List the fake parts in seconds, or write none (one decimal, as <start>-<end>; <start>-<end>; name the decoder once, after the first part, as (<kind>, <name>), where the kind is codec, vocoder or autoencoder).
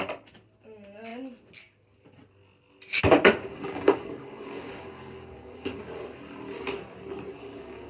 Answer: 3.5-5.8 (codec, DAC); 7.3-7.9